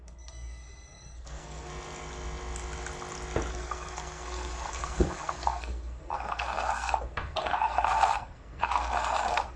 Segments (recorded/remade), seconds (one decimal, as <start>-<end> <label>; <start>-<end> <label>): 0.0-1.7 remade; 1.7-3.5 recorded; 3.5-9.6 remade